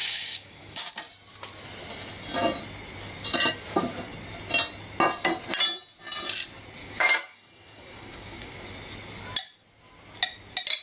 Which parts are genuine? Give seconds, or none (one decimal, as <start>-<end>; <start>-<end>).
0.9-6.8; 8.6-10.8